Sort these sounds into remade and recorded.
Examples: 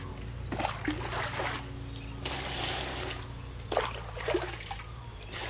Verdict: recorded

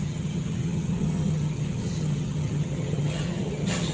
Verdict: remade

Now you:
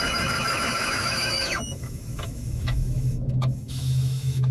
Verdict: remade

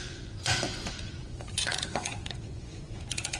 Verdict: remade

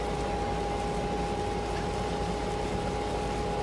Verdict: recorded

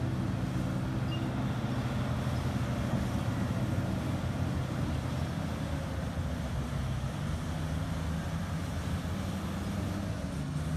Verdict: recorded